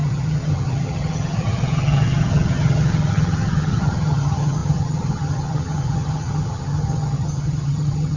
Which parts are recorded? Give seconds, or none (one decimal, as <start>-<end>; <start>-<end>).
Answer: none